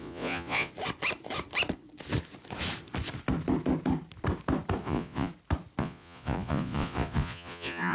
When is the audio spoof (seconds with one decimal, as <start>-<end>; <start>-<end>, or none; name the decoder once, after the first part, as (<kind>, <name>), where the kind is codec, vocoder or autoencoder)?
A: 0.0-0.7 (vocoder, Vocos); 4.8-5.3; 5.8-7.9